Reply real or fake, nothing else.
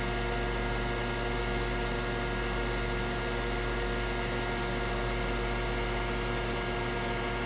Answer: real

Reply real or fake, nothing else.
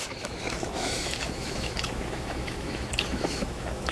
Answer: fake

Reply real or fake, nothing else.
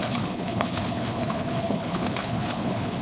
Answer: fake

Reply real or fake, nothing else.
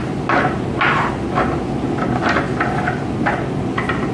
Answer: real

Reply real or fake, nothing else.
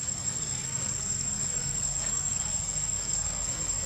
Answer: fake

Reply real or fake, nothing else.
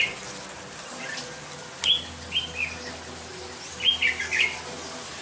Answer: real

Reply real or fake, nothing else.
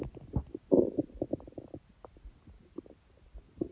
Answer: real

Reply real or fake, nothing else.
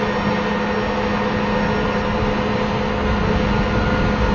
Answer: real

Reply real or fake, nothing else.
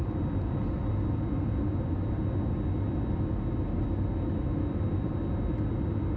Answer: real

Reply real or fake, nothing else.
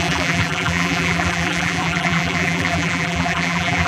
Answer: fake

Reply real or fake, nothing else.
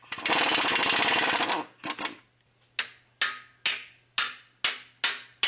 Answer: real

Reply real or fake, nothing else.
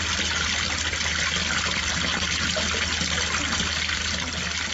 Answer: real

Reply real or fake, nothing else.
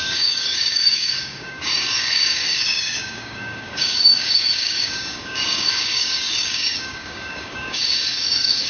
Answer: fake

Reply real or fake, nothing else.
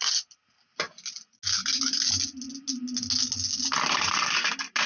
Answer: real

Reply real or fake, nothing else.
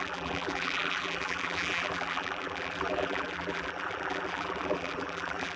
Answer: fake